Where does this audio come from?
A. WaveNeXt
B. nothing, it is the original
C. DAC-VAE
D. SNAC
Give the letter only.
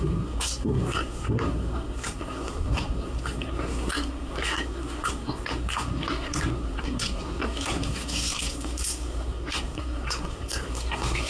D